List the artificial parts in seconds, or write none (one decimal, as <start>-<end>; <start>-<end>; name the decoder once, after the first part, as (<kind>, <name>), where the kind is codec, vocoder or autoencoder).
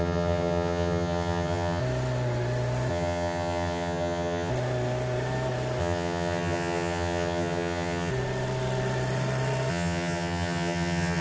0.0-1.8 (vocoder, HiFi-GAN); 2.9-4.5; 5.8-8.1; 9.7-11.2